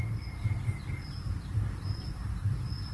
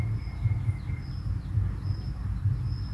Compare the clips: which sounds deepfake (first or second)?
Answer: first